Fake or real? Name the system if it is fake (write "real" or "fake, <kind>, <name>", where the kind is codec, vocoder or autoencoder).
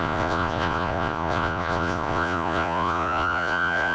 fake, vocoder, Vocos